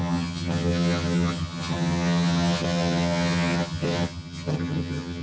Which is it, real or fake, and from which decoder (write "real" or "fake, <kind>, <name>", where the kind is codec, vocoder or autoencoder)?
fake, vocoder, HiFi-GAN